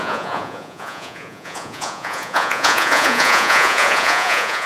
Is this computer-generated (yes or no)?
yes